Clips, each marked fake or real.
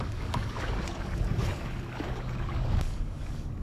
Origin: fake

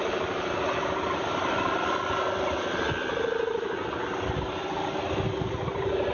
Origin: real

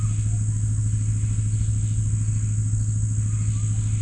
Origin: real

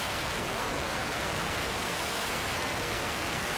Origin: fake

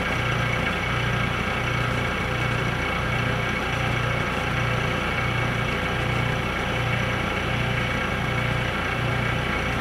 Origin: real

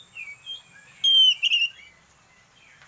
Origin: real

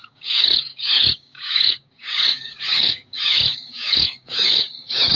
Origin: fake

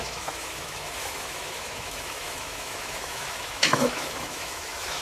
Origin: fake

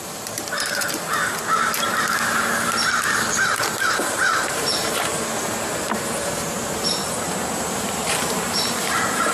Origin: fake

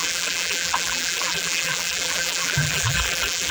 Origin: fake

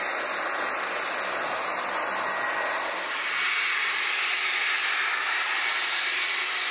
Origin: real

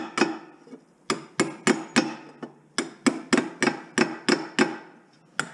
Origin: real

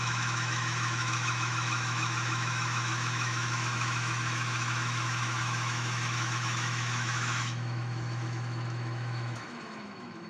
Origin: fake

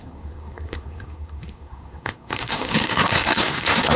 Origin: fake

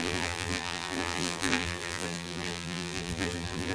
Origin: fake